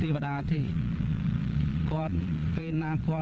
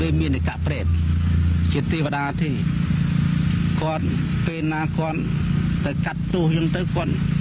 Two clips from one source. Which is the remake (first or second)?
first